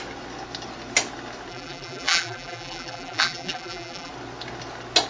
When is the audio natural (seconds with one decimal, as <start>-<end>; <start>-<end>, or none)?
0.0-1.5; 4.1-5.1